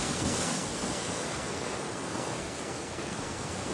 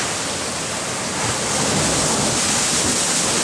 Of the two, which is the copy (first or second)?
first